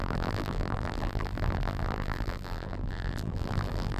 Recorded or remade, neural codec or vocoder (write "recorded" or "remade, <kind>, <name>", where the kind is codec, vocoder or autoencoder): remade, vocoder, BigVGAN v2